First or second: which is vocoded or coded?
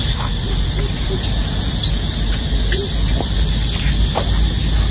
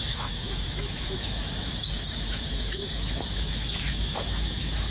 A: second